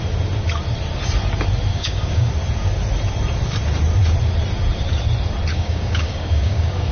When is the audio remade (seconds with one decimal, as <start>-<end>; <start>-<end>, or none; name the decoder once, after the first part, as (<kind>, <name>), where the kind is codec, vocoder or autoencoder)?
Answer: 1.7-2.3 (codec, DAC); 5.5-6.9